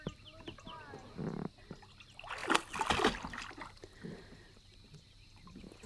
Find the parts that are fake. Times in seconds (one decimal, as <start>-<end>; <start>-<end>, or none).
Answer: none